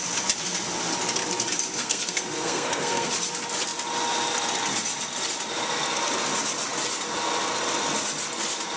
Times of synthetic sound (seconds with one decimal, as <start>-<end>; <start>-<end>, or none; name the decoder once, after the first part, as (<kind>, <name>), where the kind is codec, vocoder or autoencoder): 1.8-3.1 (codec, SNAC)